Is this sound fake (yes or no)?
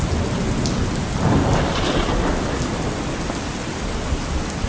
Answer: no